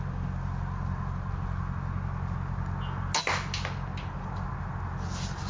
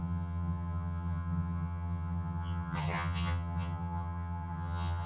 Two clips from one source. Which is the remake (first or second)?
second